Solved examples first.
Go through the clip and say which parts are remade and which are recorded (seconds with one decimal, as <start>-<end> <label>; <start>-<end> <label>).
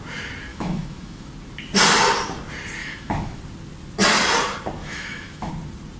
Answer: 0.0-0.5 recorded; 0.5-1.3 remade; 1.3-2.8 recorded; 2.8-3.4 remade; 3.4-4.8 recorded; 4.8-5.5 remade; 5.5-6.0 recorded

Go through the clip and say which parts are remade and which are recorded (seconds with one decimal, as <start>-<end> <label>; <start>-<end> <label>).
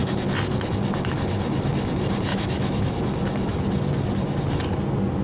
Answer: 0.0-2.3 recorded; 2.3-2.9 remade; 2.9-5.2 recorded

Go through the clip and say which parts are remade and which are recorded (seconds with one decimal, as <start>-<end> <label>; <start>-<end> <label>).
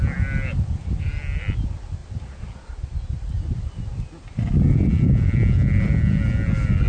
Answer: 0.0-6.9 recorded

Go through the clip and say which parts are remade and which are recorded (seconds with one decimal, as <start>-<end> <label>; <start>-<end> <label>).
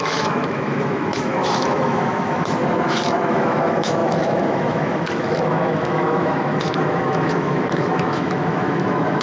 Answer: 0.0-9.2 remade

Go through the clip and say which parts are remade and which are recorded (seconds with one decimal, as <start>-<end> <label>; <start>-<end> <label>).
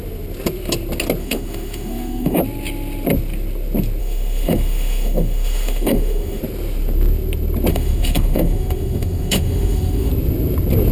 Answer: 0.0-1.2 recorded; 1.2-2.4 remade; 2.4-4.0 recorded; 4.0-6.4 remade; 6.4-7.7 recorded; 7.7-10.1 remade; 10.1-10.9 recorded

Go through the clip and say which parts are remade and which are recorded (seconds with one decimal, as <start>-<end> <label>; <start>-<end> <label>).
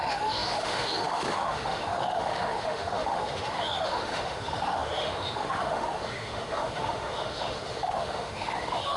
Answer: 0.0-9.0 remade